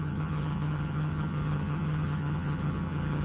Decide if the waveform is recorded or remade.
remade